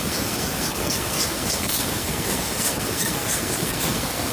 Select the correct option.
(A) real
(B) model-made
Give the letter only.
B